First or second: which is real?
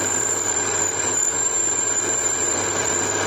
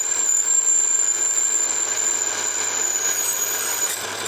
second